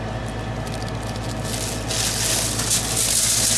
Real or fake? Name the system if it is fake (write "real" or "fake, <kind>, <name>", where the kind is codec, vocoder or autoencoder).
real